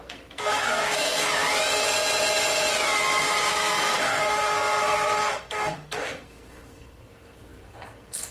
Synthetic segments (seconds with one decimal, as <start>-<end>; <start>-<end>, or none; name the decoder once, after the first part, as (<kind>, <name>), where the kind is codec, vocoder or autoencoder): 0.0-1.3 (codec, SNAC); 3.5-8.3